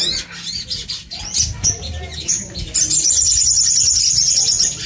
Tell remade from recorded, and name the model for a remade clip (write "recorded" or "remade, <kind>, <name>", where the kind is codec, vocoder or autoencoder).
recorded